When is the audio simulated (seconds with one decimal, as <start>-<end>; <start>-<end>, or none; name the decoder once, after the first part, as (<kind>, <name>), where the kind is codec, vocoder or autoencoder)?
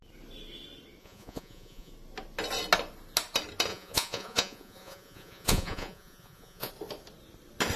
1.0-1.9 (vocoder, Vocos); 3.7-6.7